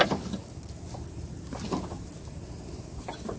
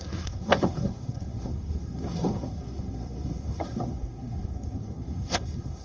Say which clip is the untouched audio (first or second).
first